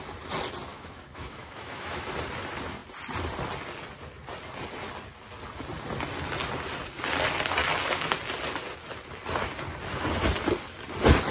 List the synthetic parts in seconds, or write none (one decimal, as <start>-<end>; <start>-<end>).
0.7-2.1